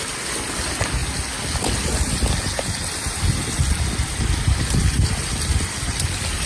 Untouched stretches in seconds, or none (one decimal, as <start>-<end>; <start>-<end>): 0.0-6.5